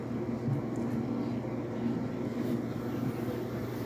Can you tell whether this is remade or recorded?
recorded